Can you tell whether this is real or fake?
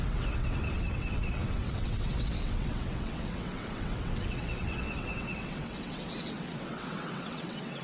fake